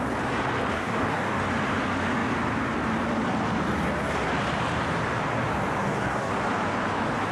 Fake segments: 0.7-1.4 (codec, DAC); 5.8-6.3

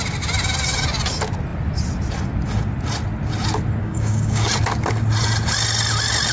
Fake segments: 3.8-4.5 (codec, DAC)

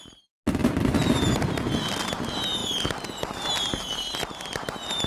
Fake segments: none

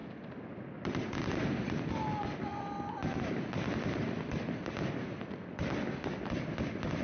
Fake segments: none